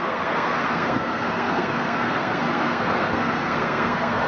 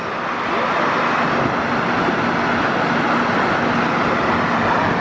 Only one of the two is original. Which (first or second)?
second